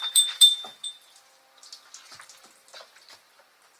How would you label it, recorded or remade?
remade